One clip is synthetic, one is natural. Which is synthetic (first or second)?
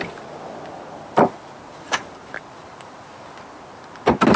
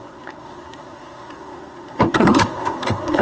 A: second